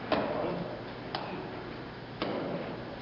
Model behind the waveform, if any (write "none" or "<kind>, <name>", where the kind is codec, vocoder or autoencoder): none